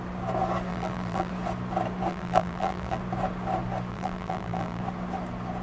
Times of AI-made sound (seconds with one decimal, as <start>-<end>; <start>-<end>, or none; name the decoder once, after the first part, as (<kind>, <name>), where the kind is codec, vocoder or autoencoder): 0.7-1.3 (vocoder, BigVGAN v2); 2.1-3.0; 3.9-4.8